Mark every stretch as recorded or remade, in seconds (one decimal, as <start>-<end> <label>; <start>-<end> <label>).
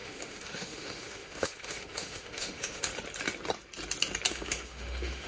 0.0-2.9 remade; 2.9-4.3 recorded; 4.3-5.3 remade